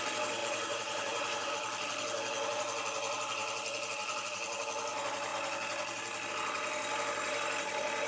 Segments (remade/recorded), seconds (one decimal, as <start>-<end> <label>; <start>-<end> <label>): 0.0-0.4 recorded; 0.4-1.5 remade; 1.5-8.1 recorded